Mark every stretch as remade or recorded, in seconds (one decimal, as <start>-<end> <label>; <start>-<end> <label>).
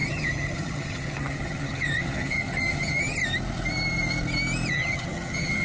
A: 0.0-3.2 remade; 3.2-4.7 recorded; 4.7-5.6 remade